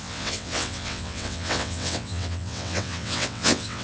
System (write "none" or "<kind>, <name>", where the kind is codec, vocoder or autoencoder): vocoder, WaveNeXt